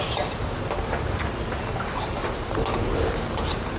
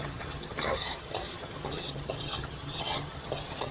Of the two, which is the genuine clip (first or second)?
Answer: first